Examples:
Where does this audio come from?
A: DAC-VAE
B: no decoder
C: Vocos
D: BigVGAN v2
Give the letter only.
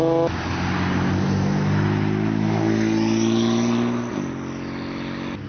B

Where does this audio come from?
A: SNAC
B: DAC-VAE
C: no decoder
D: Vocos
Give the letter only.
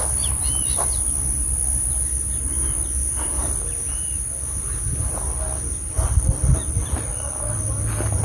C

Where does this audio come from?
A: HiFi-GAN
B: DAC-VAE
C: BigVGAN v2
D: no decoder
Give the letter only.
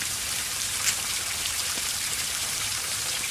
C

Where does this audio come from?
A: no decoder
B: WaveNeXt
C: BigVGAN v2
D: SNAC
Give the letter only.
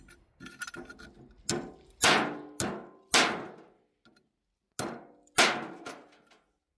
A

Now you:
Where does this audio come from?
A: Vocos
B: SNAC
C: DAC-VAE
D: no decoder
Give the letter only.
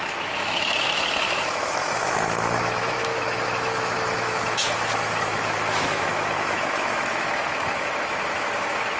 C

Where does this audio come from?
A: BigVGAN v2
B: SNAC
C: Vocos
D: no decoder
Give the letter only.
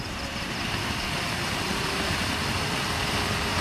A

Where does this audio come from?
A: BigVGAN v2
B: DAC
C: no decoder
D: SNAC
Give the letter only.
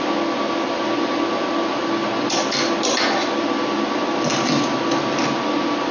C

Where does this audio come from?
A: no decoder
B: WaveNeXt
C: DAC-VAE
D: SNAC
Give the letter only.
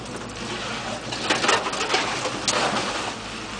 A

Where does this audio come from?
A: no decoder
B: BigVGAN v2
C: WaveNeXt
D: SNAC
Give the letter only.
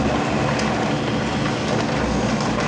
A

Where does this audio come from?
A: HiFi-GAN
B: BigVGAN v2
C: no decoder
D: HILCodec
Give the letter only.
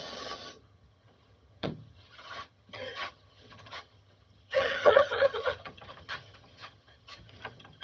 A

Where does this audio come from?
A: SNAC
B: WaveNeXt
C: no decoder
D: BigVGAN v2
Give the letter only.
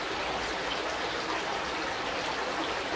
C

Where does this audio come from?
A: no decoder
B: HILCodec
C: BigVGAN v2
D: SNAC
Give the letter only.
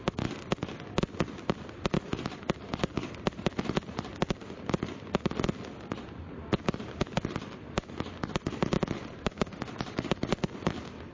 A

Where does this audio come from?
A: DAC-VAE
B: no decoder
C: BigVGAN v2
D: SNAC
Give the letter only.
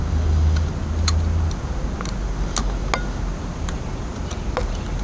B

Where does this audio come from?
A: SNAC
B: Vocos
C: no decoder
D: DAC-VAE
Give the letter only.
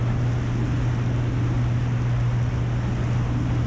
C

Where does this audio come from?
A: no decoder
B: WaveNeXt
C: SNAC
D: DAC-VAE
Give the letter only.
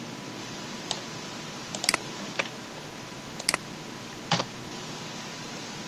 A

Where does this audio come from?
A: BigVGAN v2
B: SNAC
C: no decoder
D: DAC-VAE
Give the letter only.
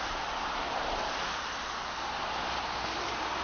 C